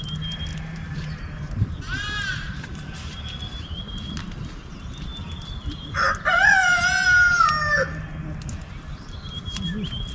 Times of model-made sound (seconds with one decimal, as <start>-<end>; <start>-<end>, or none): 0.5-3.2